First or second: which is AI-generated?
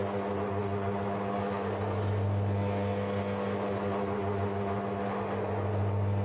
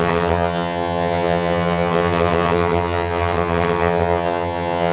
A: second